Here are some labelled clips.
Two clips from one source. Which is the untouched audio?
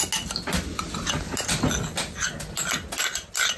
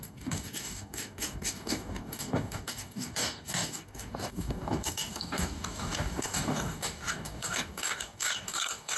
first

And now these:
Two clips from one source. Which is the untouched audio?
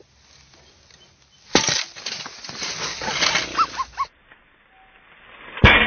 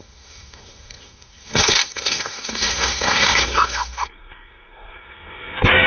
first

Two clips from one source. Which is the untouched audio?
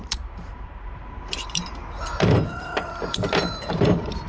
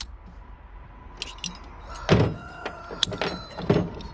second